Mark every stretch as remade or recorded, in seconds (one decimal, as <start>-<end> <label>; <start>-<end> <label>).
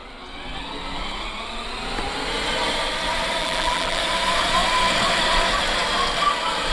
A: 0.0-3.4 recorded; 3.4-4.0 remade; 4.0-6.7 recorded